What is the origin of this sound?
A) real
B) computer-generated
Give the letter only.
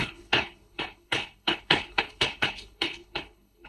B